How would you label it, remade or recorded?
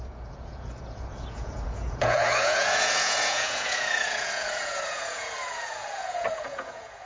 remade